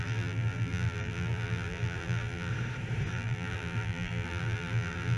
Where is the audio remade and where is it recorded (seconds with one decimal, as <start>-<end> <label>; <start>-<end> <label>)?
0.0-2.5 remade; 2.5-3.1 recorded; 3.1-5.2 remade